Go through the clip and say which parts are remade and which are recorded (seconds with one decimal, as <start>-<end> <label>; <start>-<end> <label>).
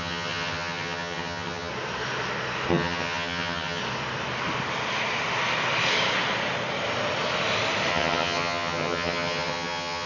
0.0-1.7 remade; 1.7-2.7 recorded; 2.7-3.8 remade; 3.8-7.9 recorded; 7.9-10.1 remade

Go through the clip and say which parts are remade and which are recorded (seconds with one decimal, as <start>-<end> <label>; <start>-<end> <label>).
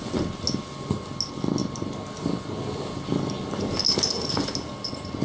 0.0-5.2 recorded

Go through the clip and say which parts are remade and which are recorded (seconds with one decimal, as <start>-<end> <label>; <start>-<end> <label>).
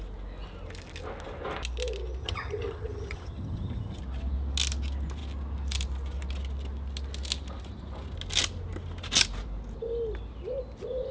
0.0-2.2 recorded; 2.2-4.0 remade; 4.0-11.1 recorded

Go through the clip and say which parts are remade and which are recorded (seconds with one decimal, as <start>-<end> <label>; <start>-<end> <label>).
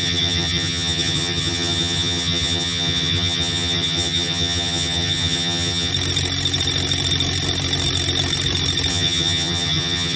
0.0-5.9 remade; 5.9-8.9 recorded; 8.9-10.2 remade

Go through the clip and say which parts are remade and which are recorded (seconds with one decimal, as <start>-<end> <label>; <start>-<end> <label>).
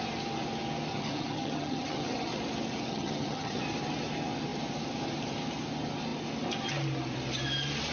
0.0-0.9 recorded; 0.9-2.4 remade; 2.4-2.9 recorded; 2.9-3.6 remade; 3.6-7.9 recorded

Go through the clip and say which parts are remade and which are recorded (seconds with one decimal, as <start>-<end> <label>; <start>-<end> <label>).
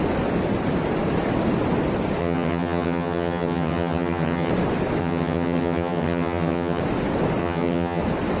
0.0-2.2 recorded; 2.2-4.5 remade; 4.5-5.0 recorded; 5.0-6.8 remade; 6.8-7.4 recorded; 7.4-8.0 remade; 8.0-8.4 recorded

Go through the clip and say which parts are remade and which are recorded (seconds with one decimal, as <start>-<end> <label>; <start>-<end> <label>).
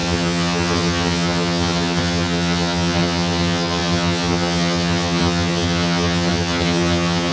0.0-7.3 remade